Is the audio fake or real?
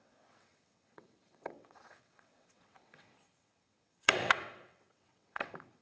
fake